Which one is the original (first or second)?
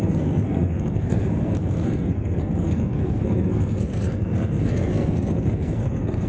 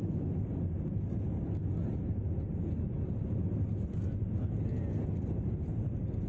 second